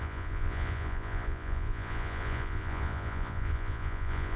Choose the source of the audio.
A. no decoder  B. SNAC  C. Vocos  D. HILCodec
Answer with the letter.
C